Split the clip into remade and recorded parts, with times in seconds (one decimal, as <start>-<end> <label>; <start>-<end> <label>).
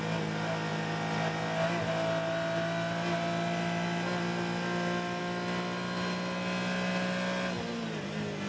0.0-8.5 recorded